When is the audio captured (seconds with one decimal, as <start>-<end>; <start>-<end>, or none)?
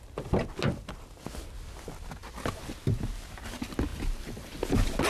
0.0-5.1